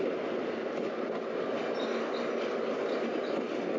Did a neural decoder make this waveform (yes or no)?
no